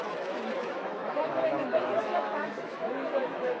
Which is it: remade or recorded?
remade